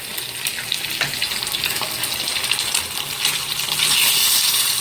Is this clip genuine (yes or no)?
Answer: yes